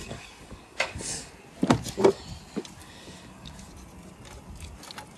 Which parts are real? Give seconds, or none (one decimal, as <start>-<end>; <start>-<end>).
1.3-2.8; 3.7-5.2